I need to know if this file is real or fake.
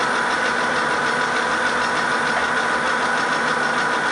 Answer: real